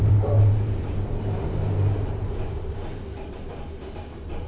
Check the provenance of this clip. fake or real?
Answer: fake